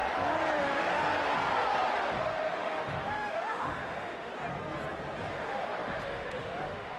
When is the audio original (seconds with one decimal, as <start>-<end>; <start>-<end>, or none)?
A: 0.0-0.6; 1.0-2.2; 4.3-5.3